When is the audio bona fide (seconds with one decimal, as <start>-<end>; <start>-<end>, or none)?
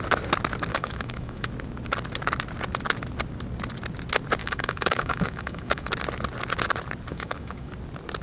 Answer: 0.0-0.7; 1.5-4.4; 5.9-7.1; 7.7-8.2